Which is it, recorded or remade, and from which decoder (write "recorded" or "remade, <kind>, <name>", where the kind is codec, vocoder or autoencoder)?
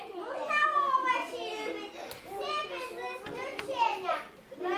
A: recorded